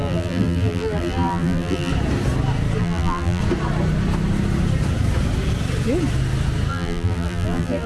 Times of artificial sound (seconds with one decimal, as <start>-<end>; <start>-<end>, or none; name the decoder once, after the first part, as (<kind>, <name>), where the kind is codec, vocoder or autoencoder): 0.0-1.9 (vocoder, BigVGAN v2); 2.8-3.4; 6.7-7.9